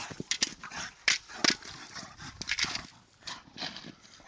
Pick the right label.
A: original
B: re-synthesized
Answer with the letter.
A